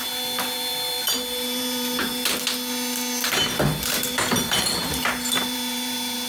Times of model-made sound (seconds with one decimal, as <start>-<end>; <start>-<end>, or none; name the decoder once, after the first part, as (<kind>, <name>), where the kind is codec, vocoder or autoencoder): 0.0-2.1 (vocoder, BigVGAN v2); 3.3-6.3